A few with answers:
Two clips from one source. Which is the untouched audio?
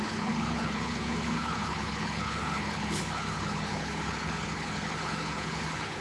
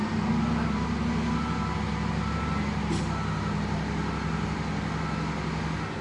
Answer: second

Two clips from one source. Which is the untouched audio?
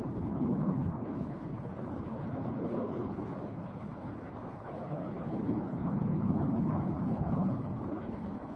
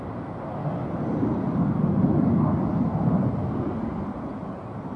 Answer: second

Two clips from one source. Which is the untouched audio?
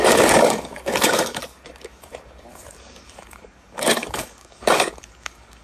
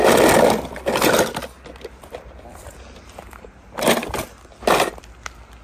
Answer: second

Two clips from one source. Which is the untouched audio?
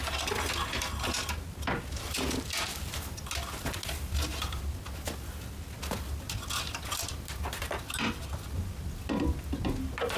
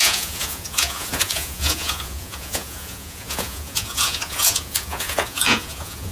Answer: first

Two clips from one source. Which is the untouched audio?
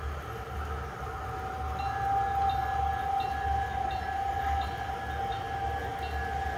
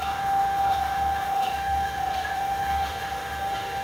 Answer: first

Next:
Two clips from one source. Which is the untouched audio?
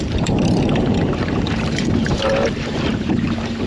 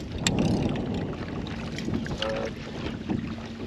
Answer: second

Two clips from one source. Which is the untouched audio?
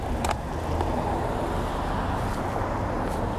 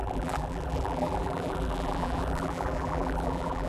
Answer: first